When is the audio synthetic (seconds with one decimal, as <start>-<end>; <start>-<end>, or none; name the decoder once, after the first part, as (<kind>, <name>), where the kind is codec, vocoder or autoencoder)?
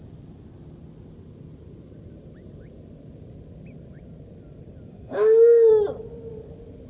4.9-5.7 (autoencoder, DAC-VAE)